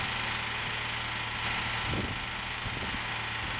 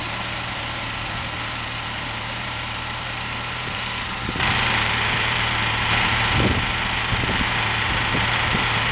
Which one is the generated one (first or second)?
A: second